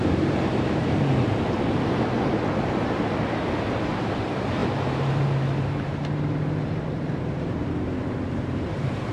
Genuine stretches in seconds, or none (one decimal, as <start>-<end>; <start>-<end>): none